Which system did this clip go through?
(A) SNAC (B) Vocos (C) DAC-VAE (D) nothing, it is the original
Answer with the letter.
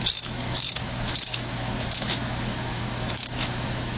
C